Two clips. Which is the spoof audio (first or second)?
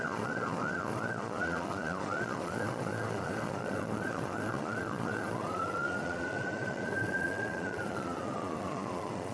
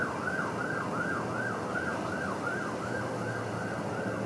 first